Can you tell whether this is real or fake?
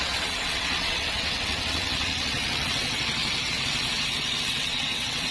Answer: fake